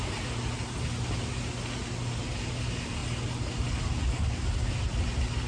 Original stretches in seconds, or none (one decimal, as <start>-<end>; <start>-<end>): 0.0-5.5